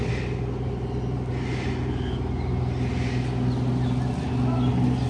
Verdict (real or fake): real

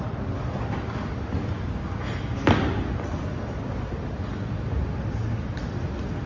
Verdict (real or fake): real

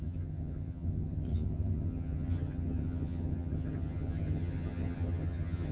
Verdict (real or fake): fake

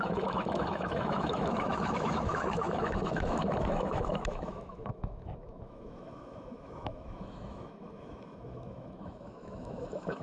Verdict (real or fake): fake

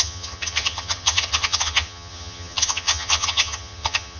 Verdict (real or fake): fake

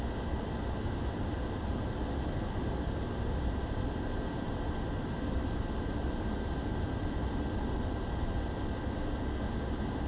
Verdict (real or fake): real